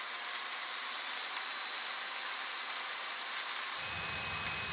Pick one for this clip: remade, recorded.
recorded